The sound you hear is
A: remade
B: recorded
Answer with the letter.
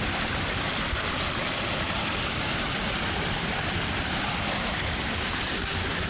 A